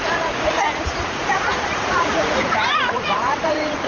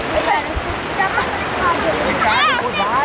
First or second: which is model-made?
first